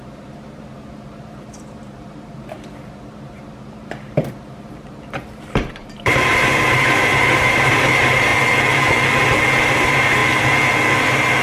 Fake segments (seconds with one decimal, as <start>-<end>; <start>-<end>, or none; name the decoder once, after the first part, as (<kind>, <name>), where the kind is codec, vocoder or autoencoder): 0.0-8.3 (vocoder, BigVGAN v2); 9.6-10.2